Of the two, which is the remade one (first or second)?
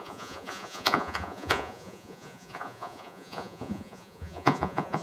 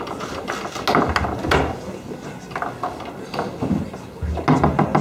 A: first